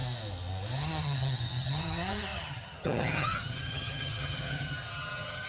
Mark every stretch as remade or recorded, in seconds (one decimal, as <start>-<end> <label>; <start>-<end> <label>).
0.0-0.8 recorded; 0.8-5.5 remade